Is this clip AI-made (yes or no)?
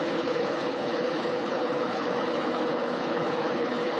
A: yes